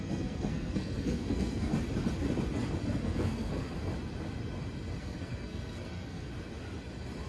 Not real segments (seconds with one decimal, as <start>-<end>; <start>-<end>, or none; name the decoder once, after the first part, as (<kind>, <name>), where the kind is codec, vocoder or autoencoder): 0.0-1.7 (codec, SNAC); 2.8-3.5; 5.0-6.3